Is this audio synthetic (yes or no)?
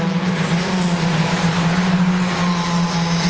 no